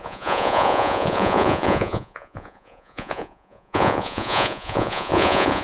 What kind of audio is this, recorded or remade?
remade